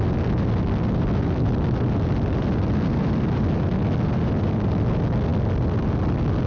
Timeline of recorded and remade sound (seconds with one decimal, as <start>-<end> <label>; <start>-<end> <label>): 0.0-6.5 recorded